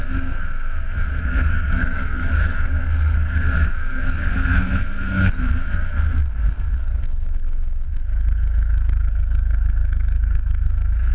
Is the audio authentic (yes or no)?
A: no